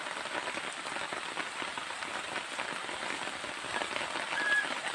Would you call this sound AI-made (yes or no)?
no